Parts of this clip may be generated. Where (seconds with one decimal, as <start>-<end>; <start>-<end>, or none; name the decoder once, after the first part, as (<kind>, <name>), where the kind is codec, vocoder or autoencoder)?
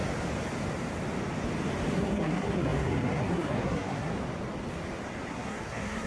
1.9-4.1 (codec, SNAC); 5.3-6.1